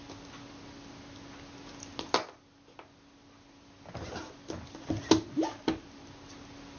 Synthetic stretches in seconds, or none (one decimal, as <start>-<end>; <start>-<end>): none